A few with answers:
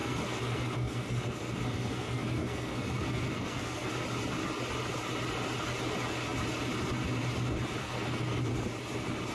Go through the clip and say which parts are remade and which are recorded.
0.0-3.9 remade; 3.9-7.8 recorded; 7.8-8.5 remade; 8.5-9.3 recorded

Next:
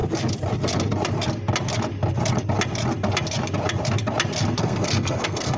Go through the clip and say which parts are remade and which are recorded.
0.0-4.6 recorded; 4.6-5.6 remade